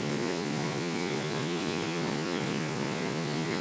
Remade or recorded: remade